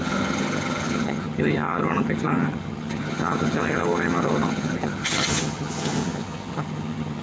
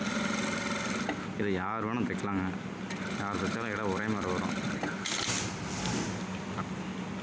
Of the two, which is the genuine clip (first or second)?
second